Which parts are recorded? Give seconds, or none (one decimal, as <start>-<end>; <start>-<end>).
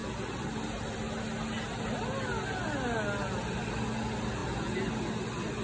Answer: 0.0-5.6